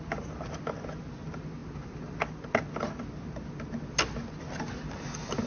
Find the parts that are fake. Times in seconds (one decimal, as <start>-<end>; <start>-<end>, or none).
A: none